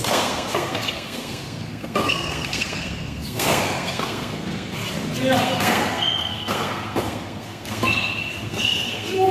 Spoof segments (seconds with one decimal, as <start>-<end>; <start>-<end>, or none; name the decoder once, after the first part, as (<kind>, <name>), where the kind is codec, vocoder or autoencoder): 0.0-4.8 (codec, SNAC); 5.4-9.3